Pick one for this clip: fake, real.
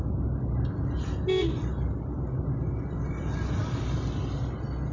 real